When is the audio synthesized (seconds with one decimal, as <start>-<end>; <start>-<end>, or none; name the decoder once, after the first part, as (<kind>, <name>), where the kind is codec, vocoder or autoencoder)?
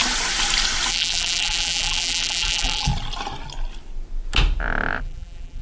0.9-2.9 (vocoder, BigVGAN v2); 5.0-5.6